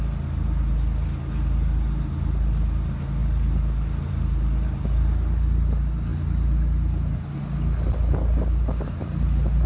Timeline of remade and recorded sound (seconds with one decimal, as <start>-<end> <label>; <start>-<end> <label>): 0.0-9.7 recorded